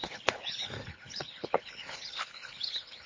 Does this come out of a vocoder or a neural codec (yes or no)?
yes